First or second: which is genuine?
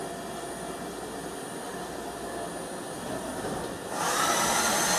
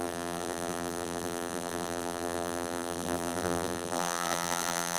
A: first